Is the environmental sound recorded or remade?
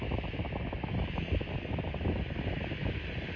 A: recorded